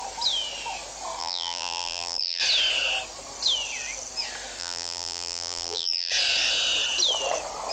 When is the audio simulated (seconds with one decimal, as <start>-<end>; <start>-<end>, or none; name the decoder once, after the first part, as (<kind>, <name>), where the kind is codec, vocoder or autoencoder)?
1.2-2.4 (vocoder, BigVGAN v2); 4.6-6.1